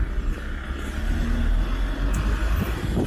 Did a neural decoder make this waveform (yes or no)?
no